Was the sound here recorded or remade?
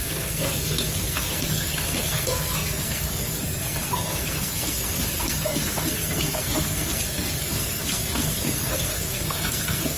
remade